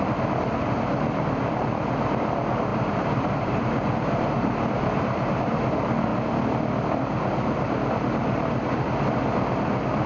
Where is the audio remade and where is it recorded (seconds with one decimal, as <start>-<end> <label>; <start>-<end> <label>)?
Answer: 0.0-2.7 recorded; 2.7-5.4 remade; 5.4-10.1 recorded